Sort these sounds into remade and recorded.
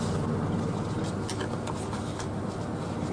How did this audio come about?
recorded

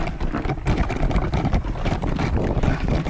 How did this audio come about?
remade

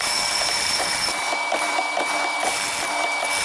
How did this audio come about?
remade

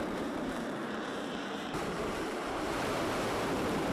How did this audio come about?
remade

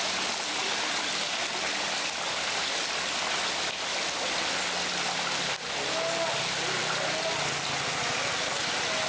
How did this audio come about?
recorded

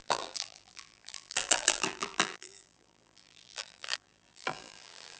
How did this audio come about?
remade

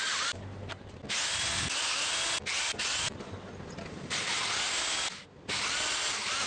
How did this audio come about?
recorded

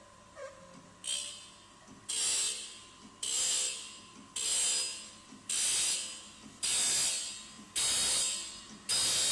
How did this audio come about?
recorded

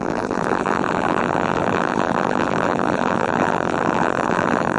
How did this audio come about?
remade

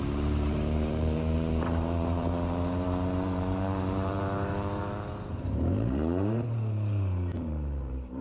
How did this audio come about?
remade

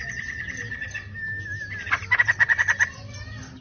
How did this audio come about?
recorded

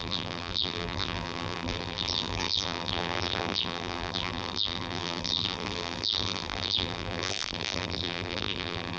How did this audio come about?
remade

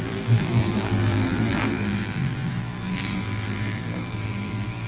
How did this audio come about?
remade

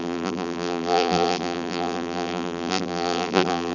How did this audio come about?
remade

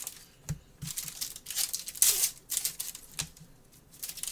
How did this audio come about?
recorded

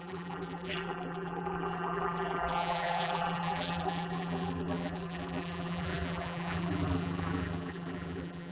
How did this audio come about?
remade